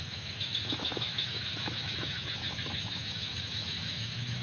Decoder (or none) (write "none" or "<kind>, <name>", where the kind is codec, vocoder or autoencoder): autoencoder, DAC-VAE